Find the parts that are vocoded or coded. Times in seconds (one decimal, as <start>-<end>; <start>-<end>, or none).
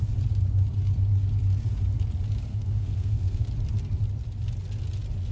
2.5-3.5